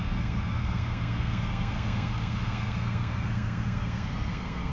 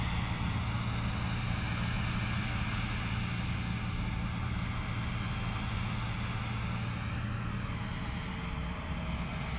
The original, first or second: second